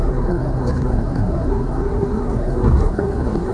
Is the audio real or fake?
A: fake